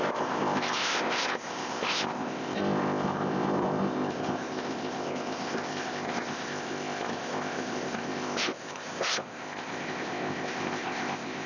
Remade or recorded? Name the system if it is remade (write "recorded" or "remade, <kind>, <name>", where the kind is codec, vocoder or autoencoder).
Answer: remade, codec, ZipCodec